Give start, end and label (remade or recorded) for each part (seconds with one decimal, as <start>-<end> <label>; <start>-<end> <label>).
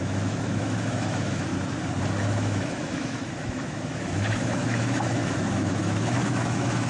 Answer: 0.0-1.5 remade; 1.5-2.2 recorded; 2.2-6.9 remade